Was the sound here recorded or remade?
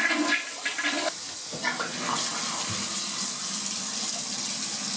recorded